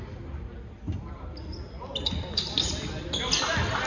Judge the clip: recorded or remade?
recorded